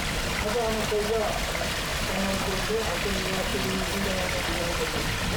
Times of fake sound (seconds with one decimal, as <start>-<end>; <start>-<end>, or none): none

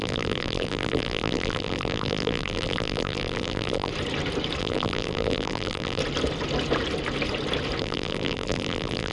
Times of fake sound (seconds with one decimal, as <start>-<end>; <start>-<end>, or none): 0.0-3.9; 4.6-6.0; 7.8-9.1

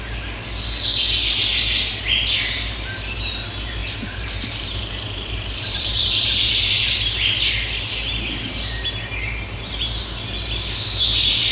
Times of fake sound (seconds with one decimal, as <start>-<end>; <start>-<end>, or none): 3.8-7.4

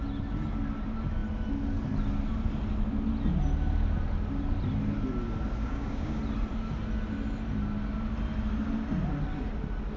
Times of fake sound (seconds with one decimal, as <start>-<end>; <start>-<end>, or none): 5.6-6.2